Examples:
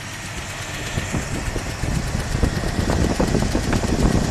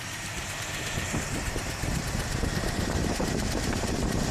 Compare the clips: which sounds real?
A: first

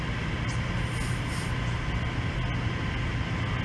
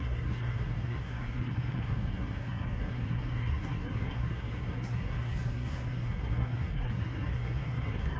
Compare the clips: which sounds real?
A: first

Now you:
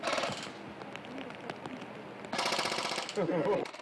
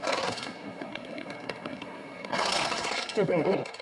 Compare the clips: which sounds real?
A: first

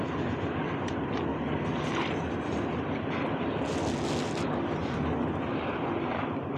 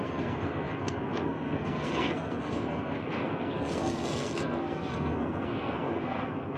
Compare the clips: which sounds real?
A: first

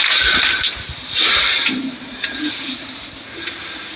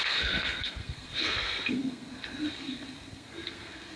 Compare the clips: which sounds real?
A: first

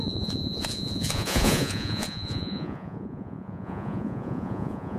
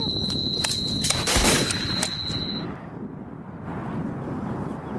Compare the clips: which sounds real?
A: second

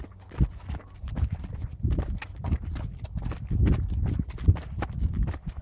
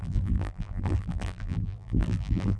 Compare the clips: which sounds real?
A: first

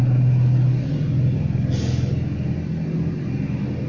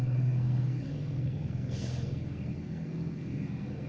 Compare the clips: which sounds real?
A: first